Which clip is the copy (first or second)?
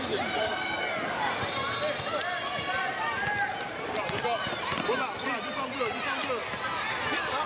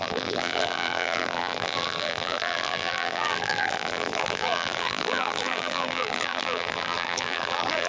second